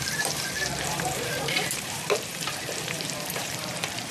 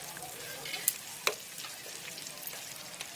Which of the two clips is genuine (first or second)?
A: second